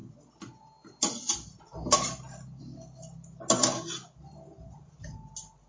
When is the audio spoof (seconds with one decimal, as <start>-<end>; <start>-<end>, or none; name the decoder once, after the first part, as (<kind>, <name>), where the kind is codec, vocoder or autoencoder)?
none